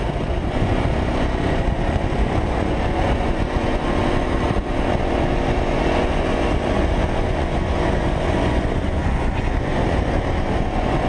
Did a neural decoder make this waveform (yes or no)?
yes